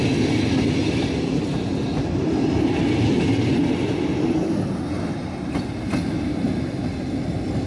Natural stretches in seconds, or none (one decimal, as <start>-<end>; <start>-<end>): 0.0-0.8; 1.3-7.7